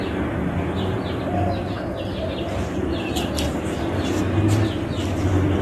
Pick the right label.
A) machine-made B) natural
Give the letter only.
B